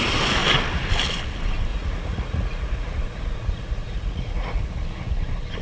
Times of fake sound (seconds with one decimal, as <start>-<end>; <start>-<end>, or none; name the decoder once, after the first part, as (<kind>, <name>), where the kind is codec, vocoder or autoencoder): 1.7-5.1 (vocoder, Vocos)